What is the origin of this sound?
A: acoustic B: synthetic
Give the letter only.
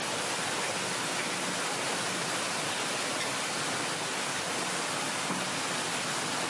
A